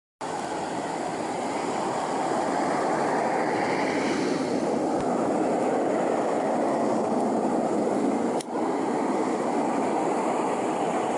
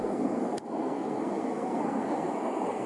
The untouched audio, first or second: first